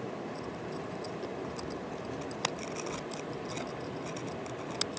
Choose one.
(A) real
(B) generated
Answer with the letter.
A